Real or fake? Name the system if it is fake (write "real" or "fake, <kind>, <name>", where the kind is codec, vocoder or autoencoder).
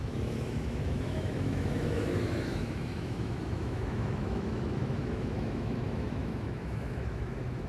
fake, autoencoder, DAC-VAE